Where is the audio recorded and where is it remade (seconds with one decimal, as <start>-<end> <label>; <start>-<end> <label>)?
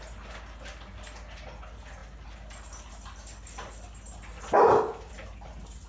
0.0-5.9 recorded